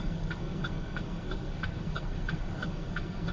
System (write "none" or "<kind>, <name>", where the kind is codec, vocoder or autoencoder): codec, SNAC